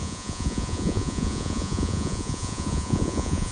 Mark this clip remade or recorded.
remade